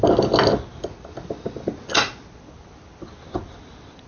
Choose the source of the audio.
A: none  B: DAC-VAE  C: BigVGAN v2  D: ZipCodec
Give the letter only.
A